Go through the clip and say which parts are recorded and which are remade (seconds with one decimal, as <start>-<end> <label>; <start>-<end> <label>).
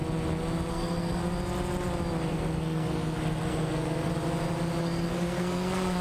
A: 0.0-0.7 recorded; 0.7-1.2 remade; 1.2-2.3 recorded; 2.3-4.1 remade; 4.1-4.8 recorded; 4.8-6.0 remade